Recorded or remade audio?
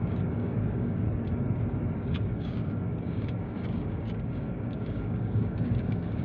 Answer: remade